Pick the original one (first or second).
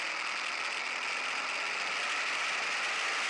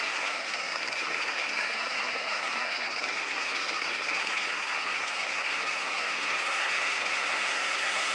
first